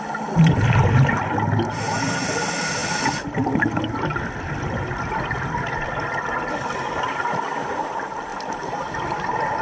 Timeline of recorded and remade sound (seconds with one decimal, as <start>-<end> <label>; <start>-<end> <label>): 0.0-8.3 recorded; 8.3-9.0 remade; 9.0-9.6 recorded